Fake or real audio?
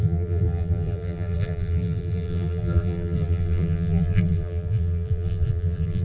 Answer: fake